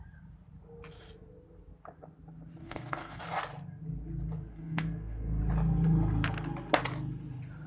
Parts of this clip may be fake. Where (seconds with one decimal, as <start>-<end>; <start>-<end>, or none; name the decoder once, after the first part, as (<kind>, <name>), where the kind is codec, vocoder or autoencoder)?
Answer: 2.6-3.2 (codec, SNAC); 4.5-5.4